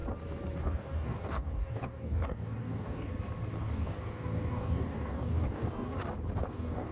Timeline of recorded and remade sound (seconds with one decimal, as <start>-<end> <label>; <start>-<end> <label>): 0.0-0.6 recorded; 0.6-3.1 remade; 3.1-3.6 recorded; 3.6-6.0 remade; 6.0-6.5 recorded; 6.5-6.9 remade